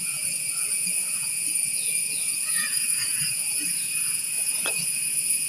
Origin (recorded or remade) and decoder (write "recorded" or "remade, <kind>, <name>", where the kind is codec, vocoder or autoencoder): remade, vocoder, Vocos